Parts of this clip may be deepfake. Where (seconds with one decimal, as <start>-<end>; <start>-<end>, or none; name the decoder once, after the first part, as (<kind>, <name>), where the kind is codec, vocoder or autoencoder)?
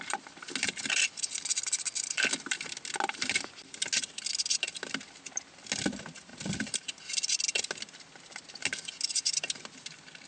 none